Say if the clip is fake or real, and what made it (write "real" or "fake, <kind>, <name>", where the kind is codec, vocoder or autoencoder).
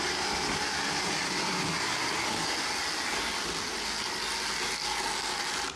real